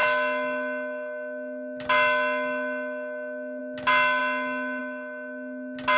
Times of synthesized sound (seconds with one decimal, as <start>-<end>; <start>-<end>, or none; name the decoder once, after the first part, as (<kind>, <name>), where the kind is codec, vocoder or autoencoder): none